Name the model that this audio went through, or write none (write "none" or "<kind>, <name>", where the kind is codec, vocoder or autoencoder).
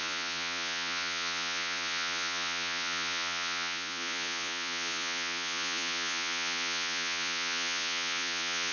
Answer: vocoder, Vocos